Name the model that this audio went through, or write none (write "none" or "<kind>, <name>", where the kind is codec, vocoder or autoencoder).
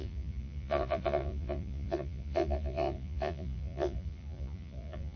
vocoder, Vocos